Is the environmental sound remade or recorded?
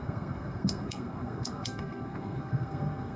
remade